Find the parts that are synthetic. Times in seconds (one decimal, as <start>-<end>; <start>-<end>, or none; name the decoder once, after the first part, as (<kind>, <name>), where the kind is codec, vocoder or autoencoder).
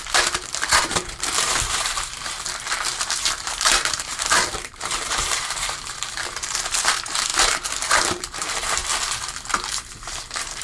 0.0-8.8 (vocoder, BigVGAN v2); 9.5-10.6